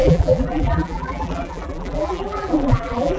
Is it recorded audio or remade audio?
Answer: remade